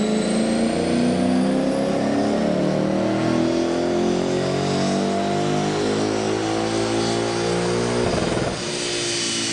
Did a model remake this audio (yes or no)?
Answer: no